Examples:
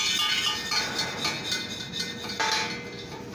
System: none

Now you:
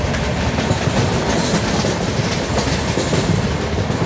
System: none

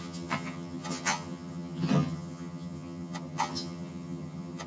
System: vocoder, HiFi-GAN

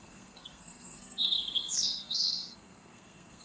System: codec, SNAC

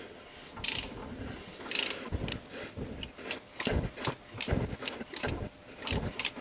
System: none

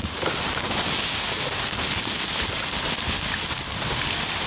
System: none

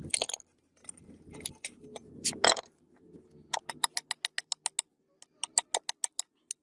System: none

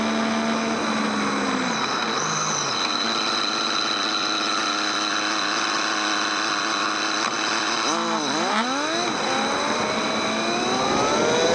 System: none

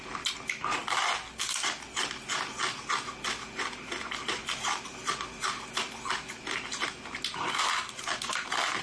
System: none